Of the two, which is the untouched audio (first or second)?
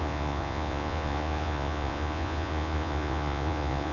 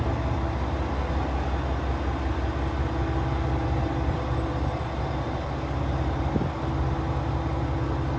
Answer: second